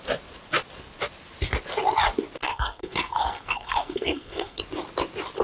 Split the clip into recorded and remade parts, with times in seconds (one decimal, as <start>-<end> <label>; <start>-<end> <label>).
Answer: 0.0-2.4 recorded; 2.4-4.6 remade; 4.6-5.4 recorded